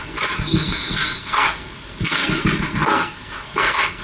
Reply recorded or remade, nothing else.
remade